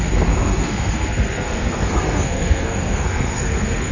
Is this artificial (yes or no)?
yes